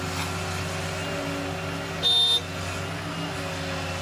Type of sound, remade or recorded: recorded